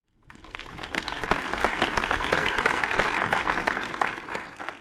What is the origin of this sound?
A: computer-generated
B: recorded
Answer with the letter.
A